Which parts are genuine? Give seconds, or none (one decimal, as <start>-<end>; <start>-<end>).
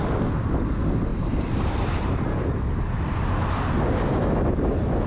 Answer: 0.0-1.1; 2.2-5.1